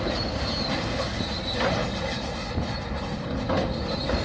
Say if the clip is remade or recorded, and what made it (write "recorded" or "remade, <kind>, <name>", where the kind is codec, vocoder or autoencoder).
recorded